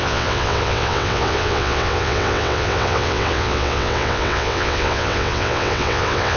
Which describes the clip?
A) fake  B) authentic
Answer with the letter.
A